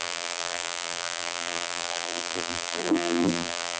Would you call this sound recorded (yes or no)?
no